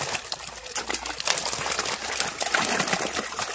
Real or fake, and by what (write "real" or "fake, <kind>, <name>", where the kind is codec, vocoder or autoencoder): real